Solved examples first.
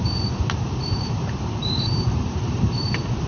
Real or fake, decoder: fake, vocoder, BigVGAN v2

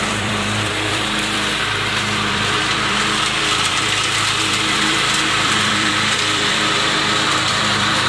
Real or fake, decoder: fake, vocoder, BigVGAN v2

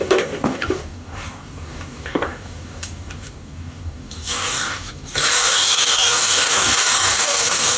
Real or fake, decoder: fake, codec, DAC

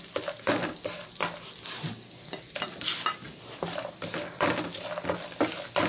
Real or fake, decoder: real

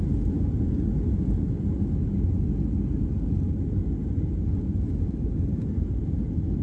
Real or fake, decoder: real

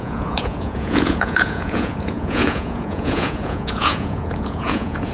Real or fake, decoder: fake, vocoder, Vocos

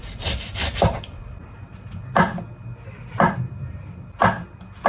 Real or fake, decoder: real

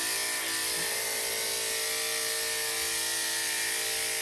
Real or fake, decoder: real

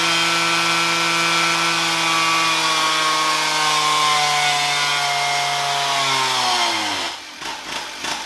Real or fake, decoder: real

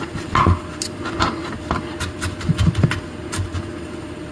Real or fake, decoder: real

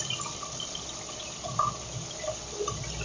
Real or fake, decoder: real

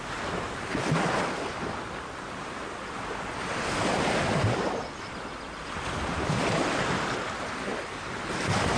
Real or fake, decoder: real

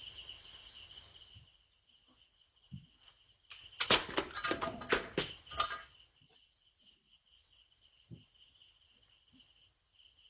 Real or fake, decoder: real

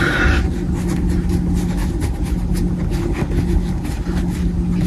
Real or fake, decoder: real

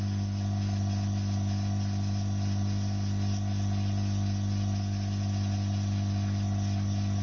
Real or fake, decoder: real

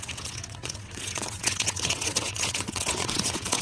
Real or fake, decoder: fake, vocoder, WaveNeXt